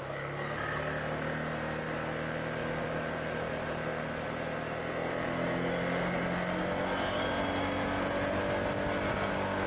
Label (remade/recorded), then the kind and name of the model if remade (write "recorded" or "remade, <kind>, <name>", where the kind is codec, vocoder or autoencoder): recorded